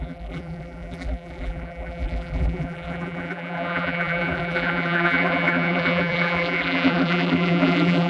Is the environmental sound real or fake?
fake